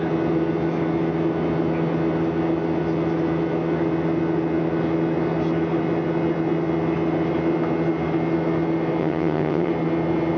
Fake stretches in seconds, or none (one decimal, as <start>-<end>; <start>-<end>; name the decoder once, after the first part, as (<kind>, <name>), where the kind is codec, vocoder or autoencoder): 9.0-9.7 (vocoder, HiFi-GAN)